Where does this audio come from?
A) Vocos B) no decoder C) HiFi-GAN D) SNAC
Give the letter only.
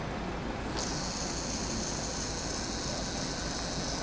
B